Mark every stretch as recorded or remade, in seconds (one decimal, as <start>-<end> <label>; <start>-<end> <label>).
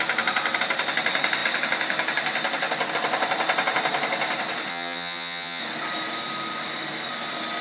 0.0-4.7 recorded; 4.7-5.6 remade; 5.6-7.6 recorded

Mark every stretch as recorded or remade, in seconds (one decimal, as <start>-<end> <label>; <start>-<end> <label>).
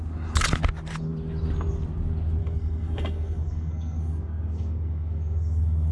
0.0-2.4 recorded; 2.4-5.9 remade